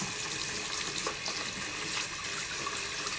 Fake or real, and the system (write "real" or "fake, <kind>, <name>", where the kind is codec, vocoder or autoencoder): real